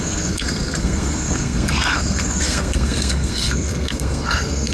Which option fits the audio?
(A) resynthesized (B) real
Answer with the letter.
A